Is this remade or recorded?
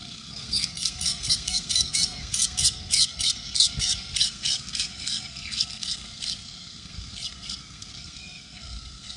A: remade